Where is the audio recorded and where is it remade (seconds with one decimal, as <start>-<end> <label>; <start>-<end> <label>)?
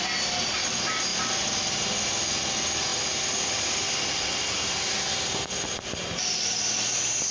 0.0-2.9 recorded; 2.9-6.6 remade; 6.6-7.3 recorded